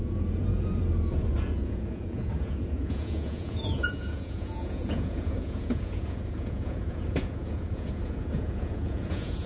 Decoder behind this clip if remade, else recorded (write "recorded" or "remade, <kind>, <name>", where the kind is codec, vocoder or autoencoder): remade, vocoder, Vocos